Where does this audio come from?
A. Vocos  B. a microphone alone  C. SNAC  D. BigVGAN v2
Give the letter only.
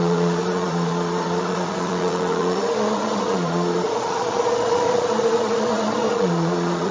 A